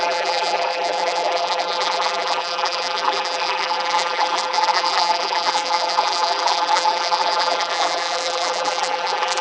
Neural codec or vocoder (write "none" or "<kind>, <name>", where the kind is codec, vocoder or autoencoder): vocoder, BigVGAN v2